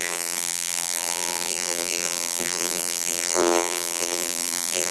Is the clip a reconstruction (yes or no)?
yes